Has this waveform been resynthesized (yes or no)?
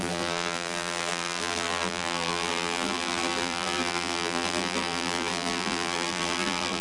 yes